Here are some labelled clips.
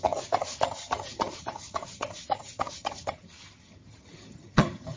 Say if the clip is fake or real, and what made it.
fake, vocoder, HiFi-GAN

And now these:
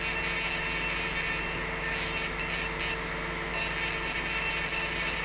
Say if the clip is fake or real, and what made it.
real